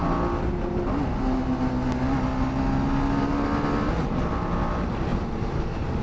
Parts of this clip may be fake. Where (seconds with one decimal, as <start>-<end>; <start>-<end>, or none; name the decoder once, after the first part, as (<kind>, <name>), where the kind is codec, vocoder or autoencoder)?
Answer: 5.1-6.0 (vocoder, BigVGAN v2)